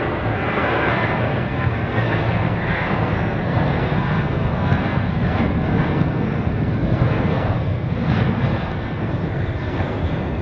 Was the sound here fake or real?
fake